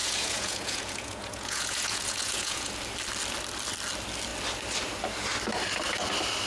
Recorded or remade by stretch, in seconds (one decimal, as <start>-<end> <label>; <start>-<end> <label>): 0.0-2.7 remade; 2.7-6.5 recorded